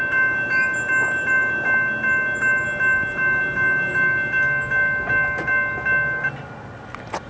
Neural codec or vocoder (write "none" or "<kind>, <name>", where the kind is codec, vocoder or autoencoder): none